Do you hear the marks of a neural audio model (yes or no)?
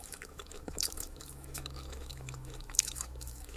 yes